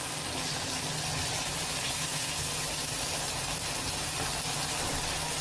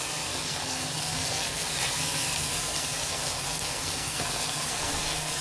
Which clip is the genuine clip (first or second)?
first